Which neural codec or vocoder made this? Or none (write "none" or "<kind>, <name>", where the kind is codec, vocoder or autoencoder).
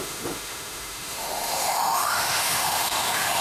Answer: autoencoder, DAC-VAE